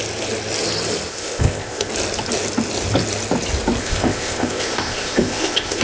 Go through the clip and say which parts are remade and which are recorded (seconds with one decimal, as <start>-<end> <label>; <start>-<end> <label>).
0.0-1.1 recorded; 1.1-1.9 remade; 1.9-3.8 recorded; 3.8-5.8 remade